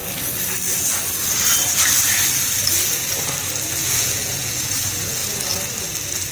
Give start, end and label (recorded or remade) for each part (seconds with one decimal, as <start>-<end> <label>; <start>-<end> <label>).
0.0-3.8 recorded; 3.8-5.2 remade; 5.2-6.3 recorded